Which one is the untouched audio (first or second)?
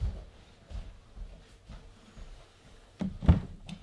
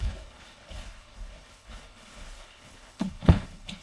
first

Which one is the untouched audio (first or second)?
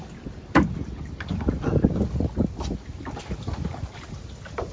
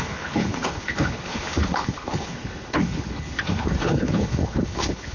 first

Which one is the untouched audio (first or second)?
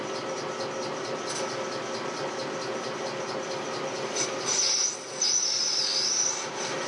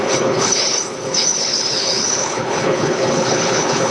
first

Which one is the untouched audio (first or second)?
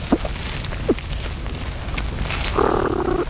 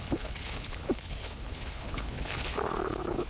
first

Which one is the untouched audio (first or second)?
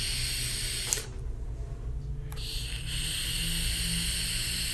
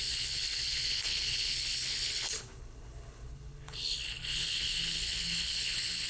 first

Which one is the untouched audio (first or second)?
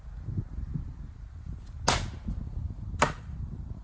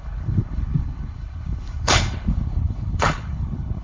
first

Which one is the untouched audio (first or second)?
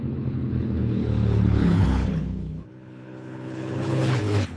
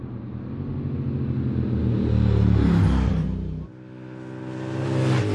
second